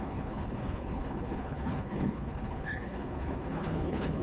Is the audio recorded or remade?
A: remade